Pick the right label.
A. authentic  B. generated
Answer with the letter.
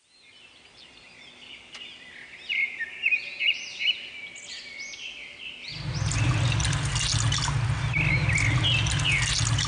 A